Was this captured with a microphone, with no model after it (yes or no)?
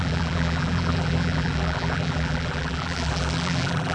no